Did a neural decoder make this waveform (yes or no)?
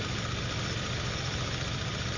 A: no